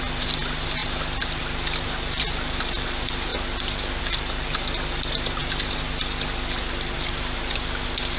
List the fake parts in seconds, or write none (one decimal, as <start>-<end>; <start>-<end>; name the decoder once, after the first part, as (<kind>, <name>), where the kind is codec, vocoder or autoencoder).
none